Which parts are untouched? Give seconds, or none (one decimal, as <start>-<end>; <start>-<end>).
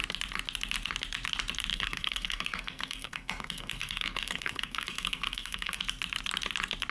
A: 0.0-1.7; 5.8-6.9